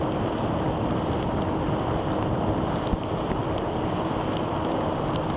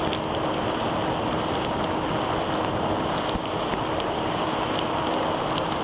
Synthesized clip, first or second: first